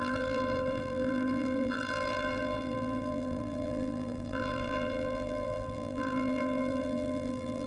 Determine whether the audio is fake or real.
fake